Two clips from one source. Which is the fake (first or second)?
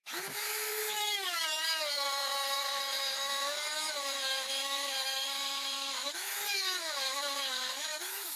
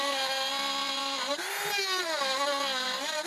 first